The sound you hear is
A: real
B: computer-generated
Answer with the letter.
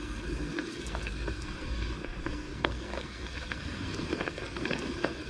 B